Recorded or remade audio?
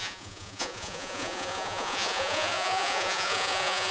remade